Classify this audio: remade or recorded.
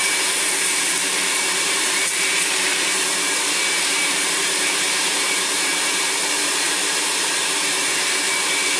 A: remade